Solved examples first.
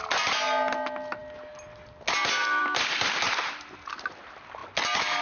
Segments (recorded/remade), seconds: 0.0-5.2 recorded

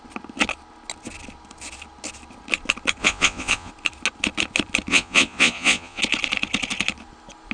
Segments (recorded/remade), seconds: 0.0-3.0 recorded; 3.0-3.7 remade; 3.7-4.9 recorded; 4.9-6.0 remade; 6.0-7.5 recorded

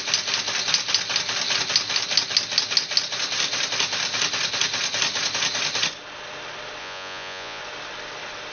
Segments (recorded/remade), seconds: 0.0-6.8 recorded; 6.8-7.6 remade; 7.6-8.5 recorded